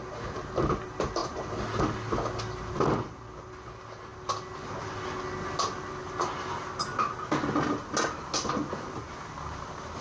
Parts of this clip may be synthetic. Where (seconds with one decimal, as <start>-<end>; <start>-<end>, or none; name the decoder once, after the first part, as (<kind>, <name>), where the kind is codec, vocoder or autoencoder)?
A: none